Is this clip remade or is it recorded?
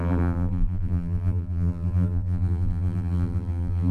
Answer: remade